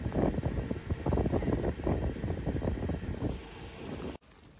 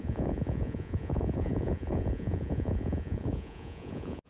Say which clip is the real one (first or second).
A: first